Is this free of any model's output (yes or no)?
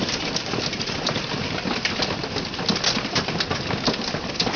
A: yes